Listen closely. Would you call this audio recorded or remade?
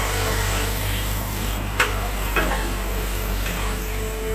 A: remade